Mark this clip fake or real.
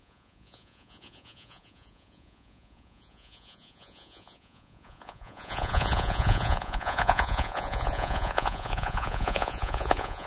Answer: fake